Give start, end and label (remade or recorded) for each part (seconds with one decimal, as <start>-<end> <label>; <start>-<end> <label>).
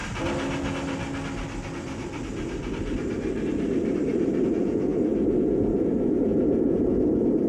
0.0-4.5 recorded; 4.5-4.9 remade; 4.9-5.4 recorded; 5.4-7.5 remade